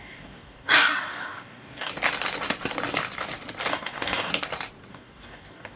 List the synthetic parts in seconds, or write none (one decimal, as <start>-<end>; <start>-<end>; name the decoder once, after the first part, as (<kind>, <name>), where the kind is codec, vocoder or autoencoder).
0.0-1.9 (codec, DAC); 3.7-4.3; 4.9-5.8